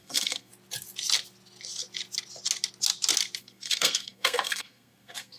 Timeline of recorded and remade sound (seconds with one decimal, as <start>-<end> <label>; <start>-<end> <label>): 0.0-0.5 remade; 0.5-3.4 recorded; 3.4-5.4 remade